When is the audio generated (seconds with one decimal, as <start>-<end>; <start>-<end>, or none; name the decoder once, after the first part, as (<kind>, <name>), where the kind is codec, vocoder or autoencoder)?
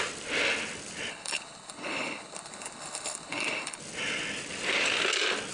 1.1-3.8 (codec, HILCodec)